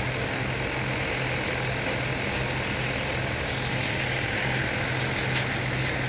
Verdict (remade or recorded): recorded